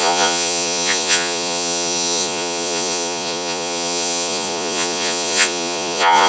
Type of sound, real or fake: fake